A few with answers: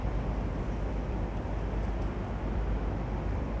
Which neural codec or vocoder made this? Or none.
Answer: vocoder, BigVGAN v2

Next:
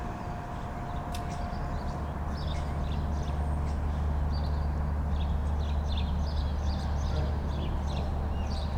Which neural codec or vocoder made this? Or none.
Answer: none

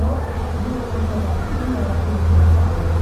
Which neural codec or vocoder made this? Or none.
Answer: none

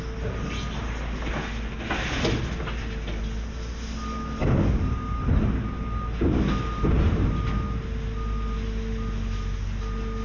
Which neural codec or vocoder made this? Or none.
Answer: none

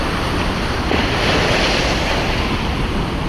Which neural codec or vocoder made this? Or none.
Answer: none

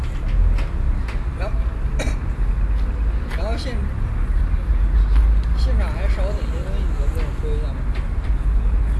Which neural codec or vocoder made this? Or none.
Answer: none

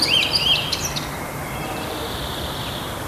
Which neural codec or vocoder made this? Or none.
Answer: vocoder, BigVGAN v2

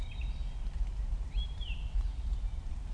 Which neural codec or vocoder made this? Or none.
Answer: vocoder, BigVGAN v2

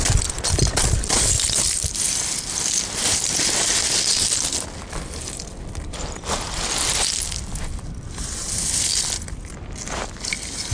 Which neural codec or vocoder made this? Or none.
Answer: none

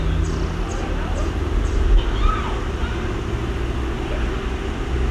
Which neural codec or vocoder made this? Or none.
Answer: none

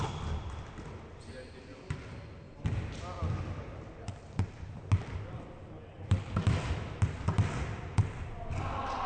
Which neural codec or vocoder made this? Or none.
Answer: none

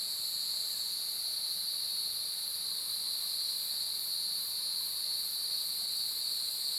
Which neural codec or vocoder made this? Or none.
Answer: none